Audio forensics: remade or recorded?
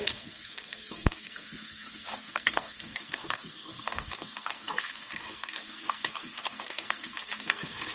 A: remade